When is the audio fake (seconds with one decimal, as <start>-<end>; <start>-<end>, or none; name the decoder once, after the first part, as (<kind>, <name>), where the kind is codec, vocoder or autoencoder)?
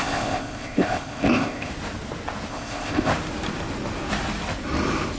0.0-1.7 (codec, ZipCodec); 2.5-3.1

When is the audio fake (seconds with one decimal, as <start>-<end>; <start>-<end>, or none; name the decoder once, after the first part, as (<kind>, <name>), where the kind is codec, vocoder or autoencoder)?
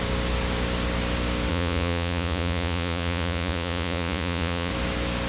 1.5-4.7 (vocoder, Vocos)